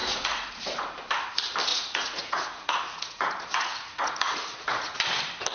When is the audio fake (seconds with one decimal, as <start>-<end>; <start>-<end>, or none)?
0.0-0.5; 1.7-5.0